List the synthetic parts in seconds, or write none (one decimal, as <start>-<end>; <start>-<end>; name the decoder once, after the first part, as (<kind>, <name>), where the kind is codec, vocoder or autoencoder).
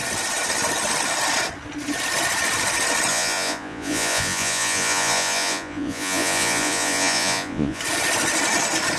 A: 3.1-7.8 (vocoder, Vocos)